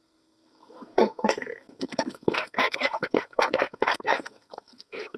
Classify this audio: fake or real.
fake